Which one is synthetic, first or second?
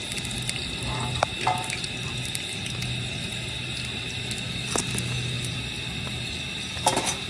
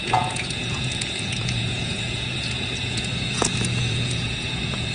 second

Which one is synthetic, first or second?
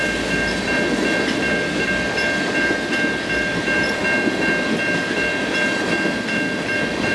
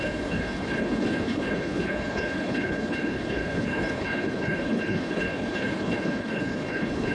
second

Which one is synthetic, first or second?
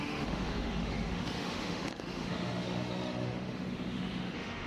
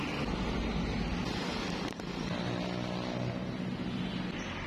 first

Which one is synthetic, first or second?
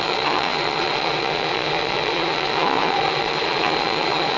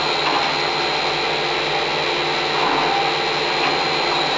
first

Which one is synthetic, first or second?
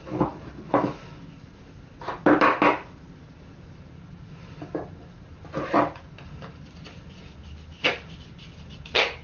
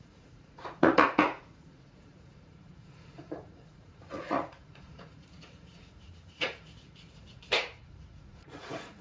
second